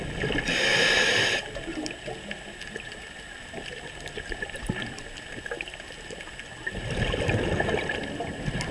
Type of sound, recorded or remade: recorded